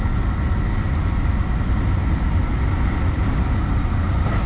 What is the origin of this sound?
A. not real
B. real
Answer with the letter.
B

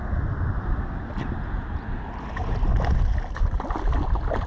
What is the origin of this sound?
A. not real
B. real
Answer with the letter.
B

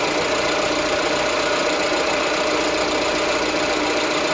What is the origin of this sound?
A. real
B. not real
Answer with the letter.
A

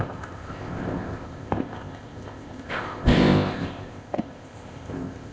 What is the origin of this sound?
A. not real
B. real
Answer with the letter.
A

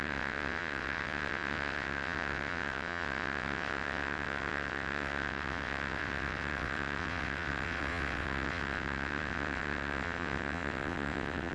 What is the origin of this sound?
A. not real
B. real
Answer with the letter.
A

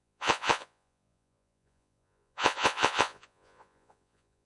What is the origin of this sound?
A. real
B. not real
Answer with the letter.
B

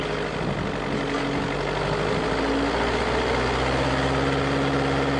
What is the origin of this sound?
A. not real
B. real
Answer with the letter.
B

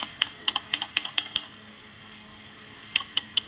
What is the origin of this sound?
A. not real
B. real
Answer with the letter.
A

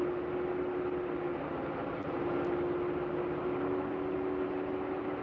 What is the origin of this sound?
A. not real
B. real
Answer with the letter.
B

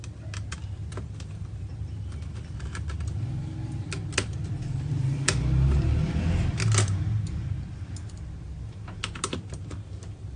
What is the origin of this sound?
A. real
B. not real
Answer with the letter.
A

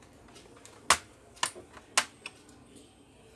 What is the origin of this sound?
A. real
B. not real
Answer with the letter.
A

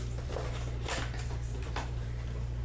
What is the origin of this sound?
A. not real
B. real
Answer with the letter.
A